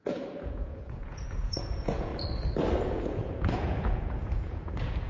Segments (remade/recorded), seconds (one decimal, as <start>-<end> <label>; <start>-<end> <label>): 0.0-2.1 remade; 2.1-2.8 recorded; 2.8-5.1 remade